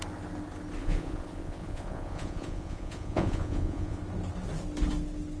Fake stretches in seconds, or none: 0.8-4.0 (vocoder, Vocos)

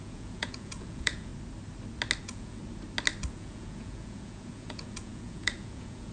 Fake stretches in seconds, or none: 0.0-1.3 (vocoder, Vocos); 2.2-2.6; 3.3-6.1

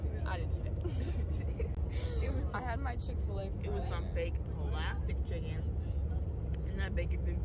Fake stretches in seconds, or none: none

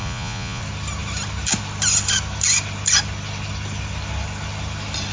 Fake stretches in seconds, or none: 0.0-0.6 (vocoder, Vocos)

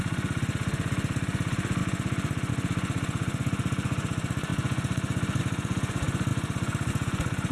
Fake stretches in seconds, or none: 0.0-7.5 (vocoder, Vocos)